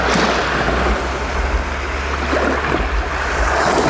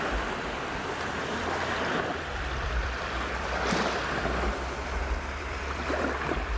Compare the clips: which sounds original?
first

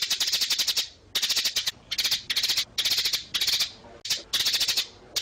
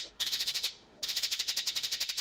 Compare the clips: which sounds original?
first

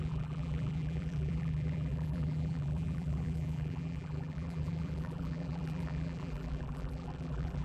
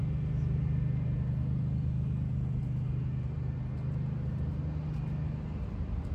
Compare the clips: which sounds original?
second